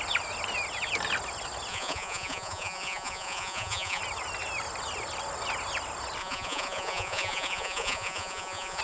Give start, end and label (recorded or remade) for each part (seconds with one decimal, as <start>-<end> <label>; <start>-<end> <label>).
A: 0.0-1.7 recorded; 1.7-4.0 remade; 4.0-6.2 recorded; 6.2-8.8 remade